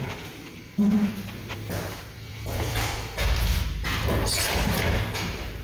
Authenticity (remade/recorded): remade